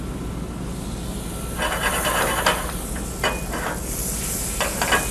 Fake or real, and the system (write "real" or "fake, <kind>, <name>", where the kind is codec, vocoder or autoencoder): real